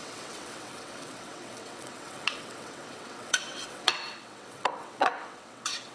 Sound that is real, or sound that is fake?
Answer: fake